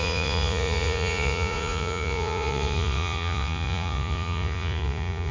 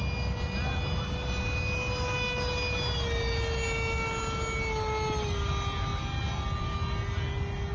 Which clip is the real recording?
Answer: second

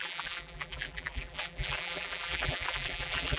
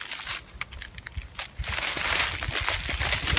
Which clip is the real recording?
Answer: second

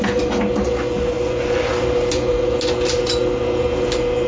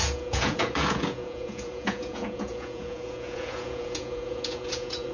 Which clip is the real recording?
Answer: first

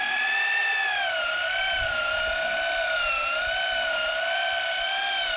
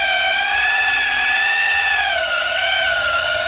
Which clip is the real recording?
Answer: first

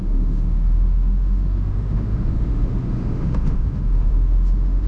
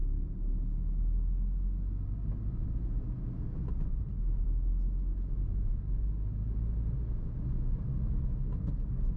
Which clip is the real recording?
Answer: second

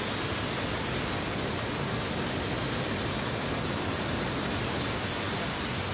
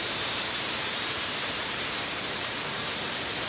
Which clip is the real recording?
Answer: first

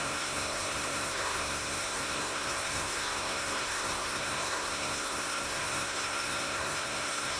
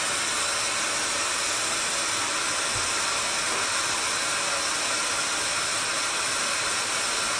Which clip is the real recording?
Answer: second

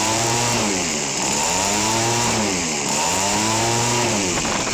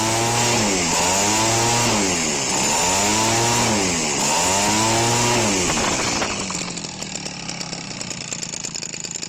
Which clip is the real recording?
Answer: second